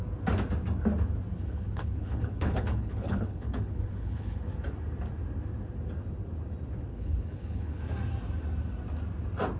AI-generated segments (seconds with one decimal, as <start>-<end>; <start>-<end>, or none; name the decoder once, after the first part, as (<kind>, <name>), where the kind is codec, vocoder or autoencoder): 1.3-4.4 (codec, HILCodec); 6.9-7.8